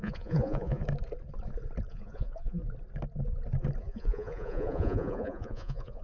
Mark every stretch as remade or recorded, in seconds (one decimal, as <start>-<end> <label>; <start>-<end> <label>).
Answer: 0.0-0.8 remade; 0.8-1.9 recorded; 1.9-2.6 remade; 2.6-3.8 recorded; 3.8-6.0 remade